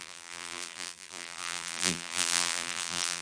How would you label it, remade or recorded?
remade